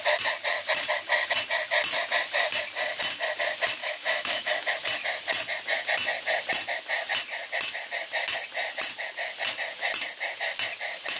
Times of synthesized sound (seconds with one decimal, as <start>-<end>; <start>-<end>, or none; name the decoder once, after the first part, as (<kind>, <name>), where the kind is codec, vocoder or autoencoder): 3.8-4.7 (autoencoder, DAC-VAE)